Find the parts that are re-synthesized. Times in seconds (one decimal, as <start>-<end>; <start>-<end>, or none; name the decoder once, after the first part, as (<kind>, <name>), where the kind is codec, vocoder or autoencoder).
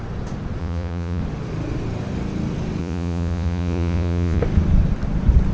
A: 0.6-1.2 (vocoder, Vocos); 2.8-4.4